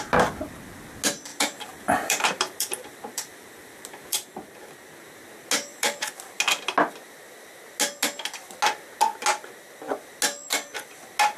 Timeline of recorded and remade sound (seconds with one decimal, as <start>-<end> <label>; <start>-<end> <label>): 0.0-1.3 recorded; 1.3-4.7 remade; 4.7-5.7 recorded; 5.7-6.4 remade; 6.4-11.4 recorded